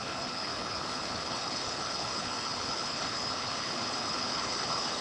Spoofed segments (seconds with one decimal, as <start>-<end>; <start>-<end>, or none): 0.0-5.0